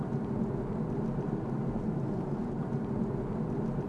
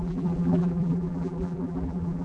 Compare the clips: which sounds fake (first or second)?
second